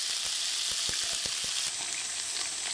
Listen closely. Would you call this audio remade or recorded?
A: recorded